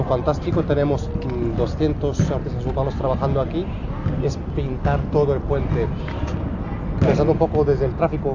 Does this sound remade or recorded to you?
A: recorded